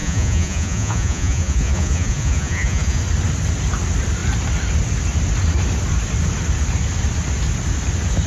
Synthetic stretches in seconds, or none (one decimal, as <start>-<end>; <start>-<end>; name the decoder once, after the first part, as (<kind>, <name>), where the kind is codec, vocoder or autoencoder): 0.0-3.0 (vocoder, Vocos)